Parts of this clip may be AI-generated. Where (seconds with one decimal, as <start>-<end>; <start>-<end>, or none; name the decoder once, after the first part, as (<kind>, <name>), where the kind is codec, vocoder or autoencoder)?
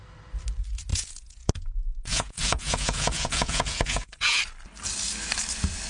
0.9-4.4 (vocoder, Vocos)